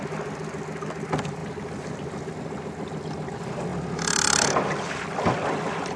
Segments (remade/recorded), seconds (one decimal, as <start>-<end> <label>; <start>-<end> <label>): 0.0-6.0 recorded